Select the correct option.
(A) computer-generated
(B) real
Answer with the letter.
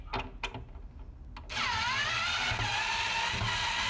B